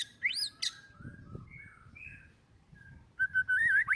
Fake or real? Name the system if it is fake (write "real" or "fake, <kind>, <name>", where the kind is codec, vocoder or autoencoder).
real